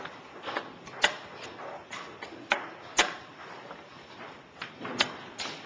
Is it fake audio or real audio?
real